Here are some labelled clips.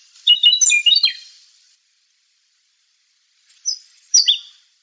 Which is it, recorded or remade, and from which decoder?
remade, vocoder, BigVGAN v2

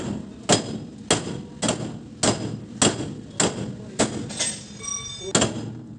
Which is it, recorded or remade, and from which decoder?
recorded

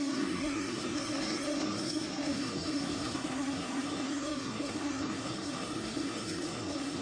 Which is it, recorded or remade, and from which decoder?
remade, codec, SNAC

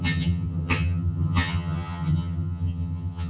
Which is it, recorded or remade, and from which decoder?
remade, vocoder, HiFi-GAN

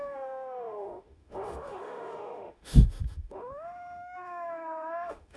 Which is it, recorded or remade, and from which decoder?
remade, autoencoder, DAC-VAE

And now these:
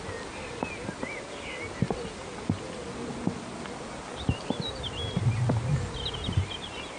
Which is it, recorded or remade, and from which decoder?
recorded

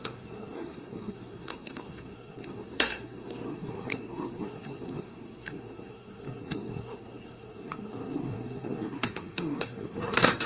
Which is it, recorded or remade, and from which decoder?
remade, codec, SNAC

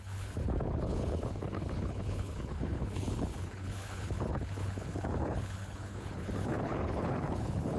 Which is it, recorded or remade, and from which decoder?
remade, codec, HILCodec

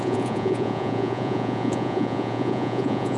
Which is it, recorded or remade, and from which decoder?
remade, vocoder, Vocos